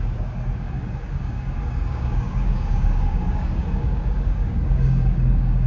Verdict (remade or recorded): remade